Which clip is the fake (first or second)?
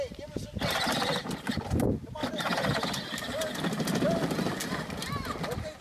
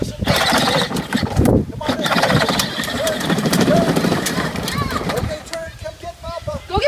second